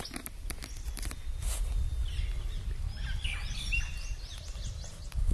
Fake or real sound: real